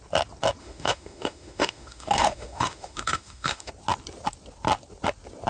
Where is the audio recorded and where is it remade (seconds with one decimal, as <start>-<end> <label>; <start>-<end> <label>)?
0.0-0.6 recorded; 0.6-3.7 remade; 3.7-5.5 recorded